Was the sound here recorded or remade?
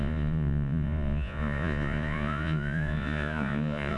remade